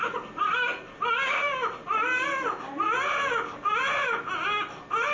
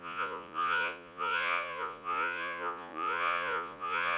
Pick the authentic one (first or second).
first